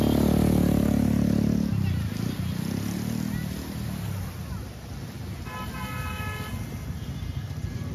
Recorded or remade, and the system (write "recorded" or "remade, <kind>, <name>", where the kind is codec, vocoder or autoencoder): recorded